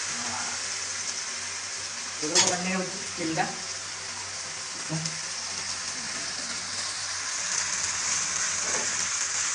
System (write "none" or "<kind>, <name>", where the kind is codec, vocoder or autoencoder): none